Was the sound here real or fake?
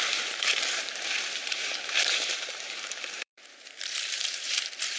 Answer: fake